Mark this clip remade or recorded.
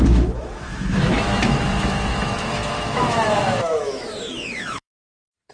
remade